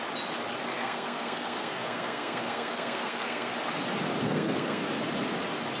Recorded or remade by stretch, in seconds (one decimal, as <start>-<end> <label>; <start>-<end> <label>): 0.0-0.7 recorded; 0.7-3.5 remade; 3.5-4.2 recorded; 4.2-4.8 remade; 4.8-5.8 recorded